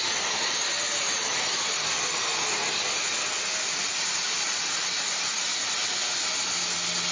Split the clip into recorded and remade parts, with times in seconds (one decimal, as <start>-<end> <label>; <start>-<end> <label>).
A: 0.0-7.1 recorded